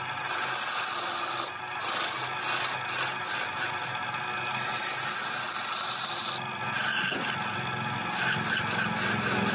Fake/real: real